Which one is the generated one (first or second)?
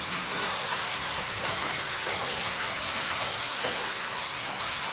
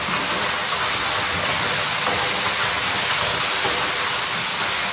first